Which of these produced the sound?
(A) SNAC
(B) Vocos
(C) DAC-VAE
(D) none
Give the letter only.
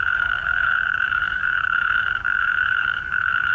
C